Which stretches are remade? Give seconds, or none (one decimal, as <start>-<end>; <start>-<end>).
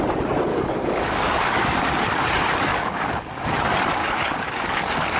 0.5-1.9; 2.7-3.5; 4.0-5.2